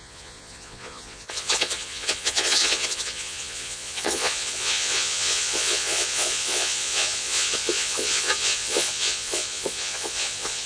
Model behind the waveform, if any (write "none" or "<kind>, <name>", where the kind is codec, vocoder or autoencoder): vocoder, Vocos